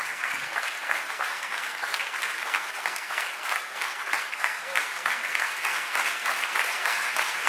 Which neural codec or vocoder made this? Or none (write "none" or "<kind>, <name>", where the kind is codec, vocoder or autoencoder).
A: codec, SNAC